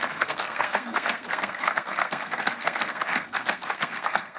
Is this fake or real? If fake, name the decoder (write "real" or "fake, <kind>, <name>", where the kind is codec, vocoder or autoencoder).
fake, codec, SNAC